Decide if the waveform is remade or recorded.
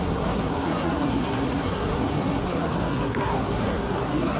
remade